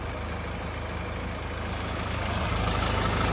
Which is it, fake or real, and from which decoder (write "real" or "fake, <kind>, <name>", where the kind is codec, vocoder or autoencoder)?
real